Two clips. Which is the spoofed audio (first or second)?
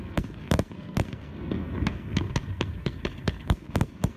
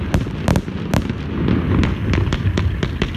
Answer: first